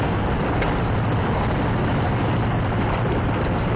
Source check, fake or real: real